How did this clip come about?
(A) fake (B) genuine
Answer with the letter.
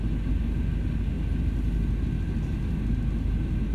B